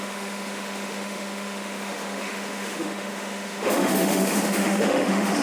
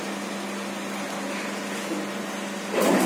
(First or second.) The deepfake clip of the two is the first